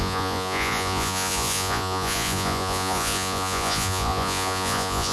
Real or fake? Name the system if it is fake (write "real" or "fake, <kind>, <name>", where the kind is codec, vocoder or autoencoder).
fake, vocoder, Vocos